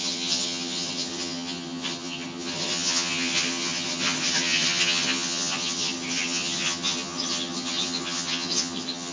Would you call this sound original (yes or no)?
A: no